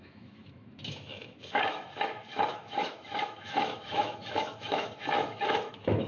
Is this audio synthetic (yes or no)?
yes